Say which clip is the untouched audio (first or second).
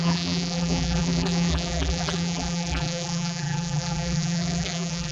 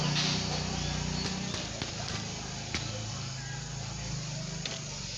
second